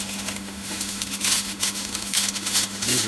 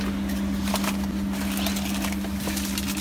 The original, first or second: second